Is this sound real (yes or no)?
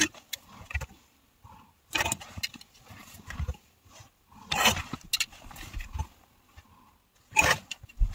yes